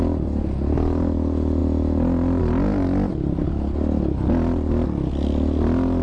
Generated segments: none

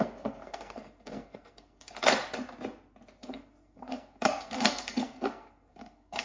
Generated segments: 0.0-2.1 (codec, SNAC); 3.2-6.2

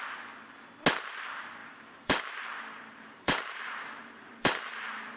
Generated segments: 1.6-2.2 (vocoder, BigVGAN v2); 2.7-5.2

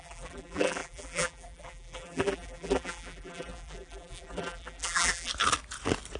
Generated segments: 0.0-5.3 (vocoder, BigVGAN v2)

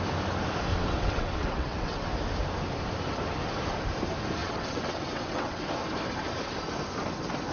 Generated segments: 0.7-2.1 (vocoder, WaveNeXt); 4.4-5.6